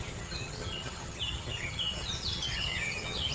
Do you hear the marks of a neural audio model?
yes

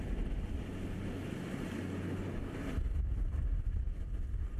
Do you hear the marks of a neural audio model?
no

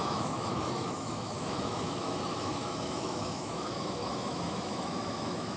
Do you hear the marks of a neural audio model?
yes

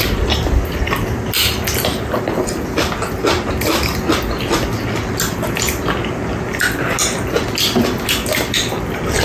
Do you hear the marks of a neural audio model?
no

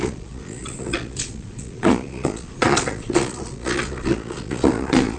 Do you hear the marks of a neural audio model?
yes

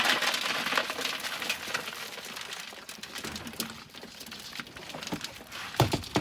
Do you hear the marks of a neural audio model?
no